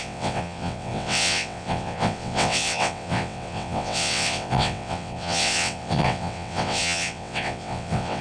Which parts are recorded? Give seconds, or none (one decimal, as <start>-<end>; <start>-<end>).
none